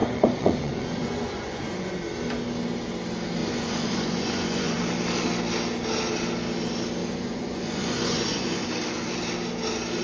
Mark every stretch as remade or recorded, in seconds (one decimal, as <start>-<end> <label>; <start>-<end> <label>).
0.0-2.1 remade; 2.1-3.4 recorded; 3.4-4.8 remade; 4.8-7.0 recorded; 7.0-8.7 remade; 8.7-10.0 recorded